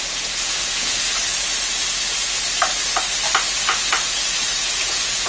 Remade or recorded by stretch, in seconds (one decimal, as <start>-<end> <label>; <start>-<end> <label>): 0.0-1.2 remade; 1.2-4.4 recorded; 4.4-5.3 remade